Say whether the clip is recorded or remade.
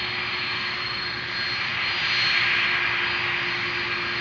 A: recorded